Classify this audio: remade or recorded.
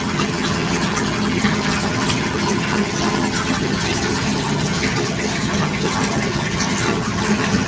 remade